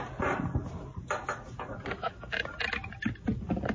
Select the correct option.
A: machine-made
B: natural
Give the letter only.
B